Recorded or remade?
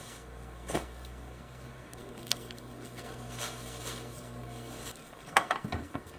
remade